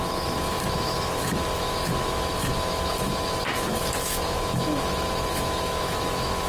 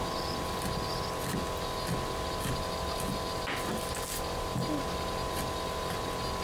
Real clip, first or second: second